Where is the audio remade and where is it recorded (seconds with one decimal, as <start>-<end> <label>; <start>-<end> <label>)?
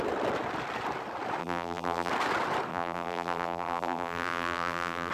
0.0-1.4 recorded; 1.4-2.1 remade; 2.1-2.7 recorded; 2.7-5.1 remade